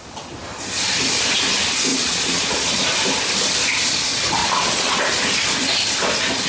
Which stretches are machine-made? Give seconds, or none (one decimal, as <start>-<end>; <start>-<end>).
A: 1.9-2.8; 4.4-5.0